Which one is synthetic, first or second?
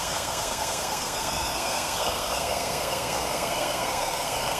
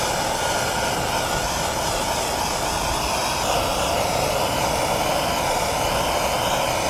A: first